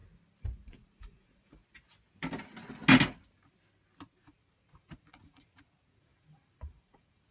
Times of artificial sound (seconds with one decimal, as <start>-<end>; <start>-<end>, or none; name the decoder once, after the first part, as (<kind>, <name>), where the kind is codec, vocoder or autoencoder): 0.7-1.6 (vocoder, Vocos); 4.2-7.3